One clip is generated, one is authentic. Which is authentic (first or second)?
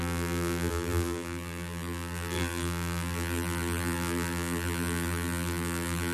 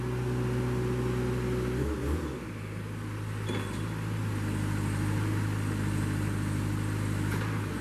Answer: second